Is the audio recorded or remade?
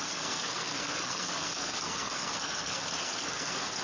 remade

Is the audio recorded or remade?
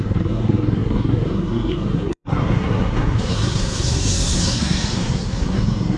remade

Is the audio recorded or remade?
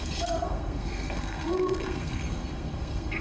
remade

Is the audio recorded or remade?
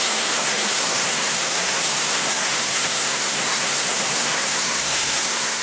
remade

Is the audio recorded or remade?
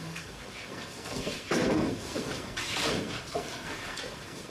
remade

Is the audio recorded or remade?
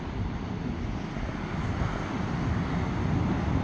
recorded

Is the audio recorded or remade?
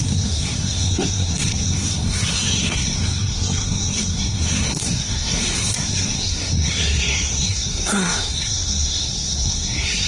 remade